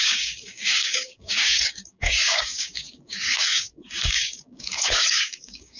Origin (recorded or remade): remade